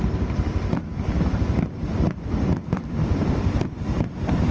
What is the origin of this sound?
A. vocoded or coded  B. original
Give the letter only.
B